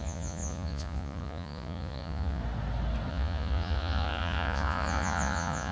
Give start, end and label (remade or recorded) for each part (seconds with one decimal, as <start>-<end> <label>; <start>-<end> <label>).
0.0-2.4 remade; 2.4-3.1 recorded; 3.1-5.7 remade